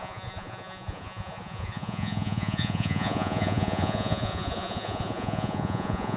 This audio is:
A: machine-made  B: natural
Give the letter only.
A